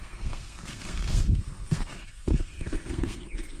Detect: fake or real fake